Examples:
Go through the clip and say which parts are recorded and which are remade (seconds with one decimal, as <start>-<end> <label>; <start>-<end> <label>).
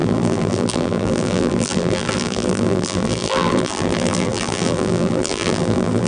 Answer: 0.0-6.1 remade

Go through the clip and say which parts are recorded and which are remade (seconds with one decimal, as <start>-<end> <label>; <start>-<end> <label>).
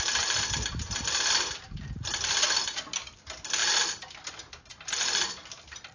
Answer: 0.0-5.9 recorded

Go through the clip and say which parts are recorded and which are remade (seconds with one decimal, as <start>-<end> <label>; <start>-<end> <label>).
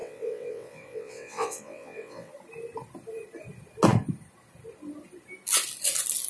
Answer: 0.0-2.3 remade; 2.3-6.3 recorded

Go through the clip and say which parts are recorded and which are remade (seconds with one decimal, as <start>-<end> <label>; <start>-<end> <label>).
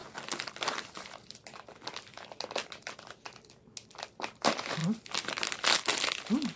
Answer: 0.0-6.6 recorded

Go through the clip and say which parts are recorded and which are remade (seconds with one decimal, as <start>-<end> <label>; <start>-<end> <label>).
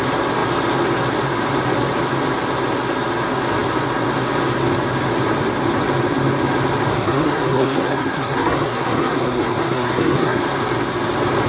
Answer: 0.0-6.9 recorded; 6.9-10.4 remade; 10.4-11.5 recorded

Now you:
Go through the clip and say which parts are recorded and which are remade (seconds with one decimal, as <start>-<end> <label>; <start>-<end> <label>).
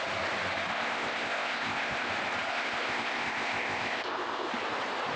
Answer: 0.0-0.7 recorded; 0.7-2.1 remade; 2.1-2.5 recorded; 2.5-4.5 remade; 4.5-5.2 recorded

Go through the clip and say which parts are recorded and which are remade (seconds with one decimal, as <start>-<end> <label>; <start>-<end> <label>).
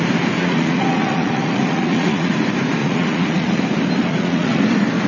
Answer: 0.0-0.4 recorded; 0.4-2.3 remade; 2.3-2.8 recorded; 2.8-3.6 remade; 3.6-4.0 recorded; 4.0-4.6 remade; 4.6-5.1 recorded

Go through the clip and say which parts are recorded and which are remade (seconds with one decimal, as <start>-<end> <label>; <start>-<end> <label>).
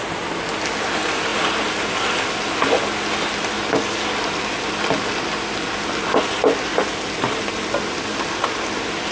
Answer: 0.0-9.1 recorded